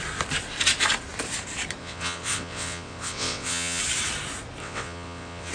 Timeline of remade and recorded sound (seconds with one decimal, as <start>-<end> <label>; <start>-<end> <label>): 0.0-1.8 recorded; 1.8-3.8 remade; 3.8-4.6 recorded; 4.6-5.5 remade